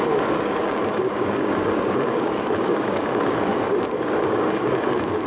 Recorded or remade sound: remade